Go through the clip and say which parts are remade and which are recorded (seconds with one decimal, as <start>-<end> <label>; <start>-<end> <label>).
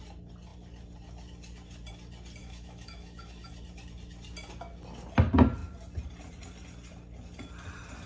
0.0-2.4 recorded; 2.4-3.5 remade; 3.5-8.1 recorded